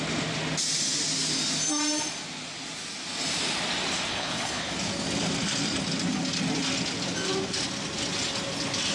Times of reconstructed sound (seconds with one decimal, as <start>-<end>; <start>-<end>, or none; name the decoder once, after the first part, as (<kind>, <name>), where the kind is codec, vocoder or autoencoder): 4.1-4.7 (codec, HILCodec)